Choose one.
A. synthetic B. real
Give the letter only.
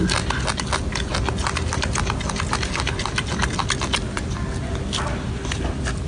B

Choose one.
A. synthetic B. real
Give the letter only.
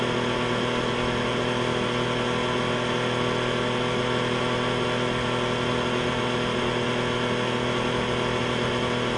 B